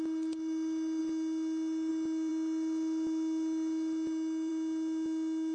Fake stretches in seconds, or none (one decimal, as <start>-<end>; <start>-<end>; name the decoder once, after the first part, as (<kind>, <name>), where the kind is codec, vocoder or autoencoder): none

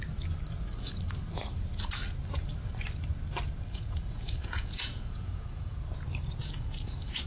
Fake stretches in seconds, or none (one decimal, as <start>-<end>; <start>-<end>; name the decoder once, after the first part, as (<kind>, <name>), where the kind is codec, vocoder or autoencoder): 3.7-5.8 (vocoder, Vocos); 6.4-7.3

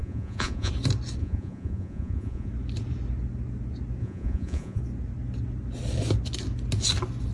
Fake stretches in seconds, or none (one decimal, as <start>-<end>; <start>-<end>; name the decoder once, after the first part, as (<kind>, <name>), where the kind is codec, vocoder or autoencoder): 0.0-0.7 (vocoder, Vocos); 1.2-2.5; 4.0-4.8

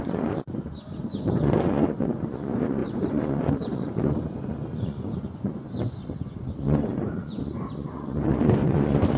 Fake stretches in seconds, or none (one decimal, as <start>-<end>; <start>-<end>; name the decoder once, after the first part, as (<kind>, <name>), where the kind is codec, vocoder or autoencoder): 0.0-9.2 (vocoder, Vocos)

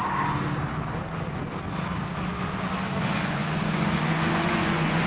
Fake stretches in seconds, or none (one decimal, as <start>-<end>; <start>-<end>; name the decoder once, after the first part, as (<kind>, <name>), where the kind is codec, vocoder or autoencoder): 3.0-5.1 (vocoder, Vocos)

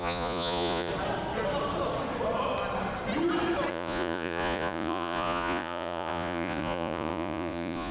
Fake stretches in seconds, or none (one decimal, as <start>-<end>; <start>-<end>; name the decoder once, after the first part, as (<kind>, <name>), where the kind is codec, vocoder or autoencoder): 0.0-0.9 (vocoder, Vocos); 3.7-7.9

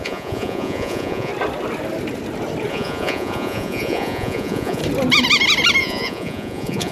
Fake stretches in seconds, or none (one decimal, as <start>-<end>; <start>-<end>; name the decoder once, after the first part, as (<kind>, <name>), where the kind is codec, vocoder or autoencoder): 0.0-1.3 (vocoder, Vocos); 2.7-4.8; 5.8-6.9

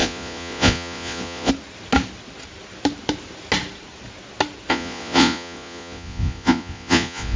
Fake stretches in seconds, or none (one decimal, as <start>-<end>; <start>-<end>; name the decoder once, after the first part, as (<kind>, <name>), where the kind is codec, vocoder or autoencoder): 0.0-1.5 (vocoder, Vocos); 4.7-7.4